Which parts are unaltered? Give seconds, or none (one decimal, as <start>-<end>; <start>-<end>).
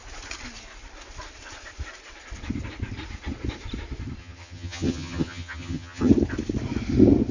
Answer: 0.0-4.2; 6.1-7.3